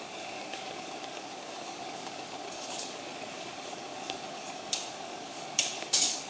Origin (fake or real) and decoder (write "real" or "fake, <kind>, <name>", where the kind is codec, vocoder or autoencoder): fake, codec, DAC